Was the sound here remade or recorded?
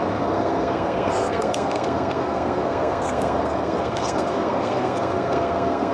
remade